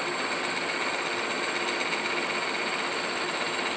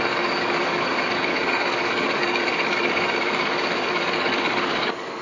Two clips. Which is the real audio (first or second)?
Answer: first